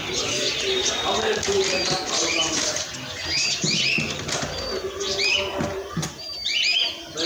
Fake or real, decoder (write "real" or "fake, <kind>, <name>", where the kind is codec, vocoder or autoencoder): real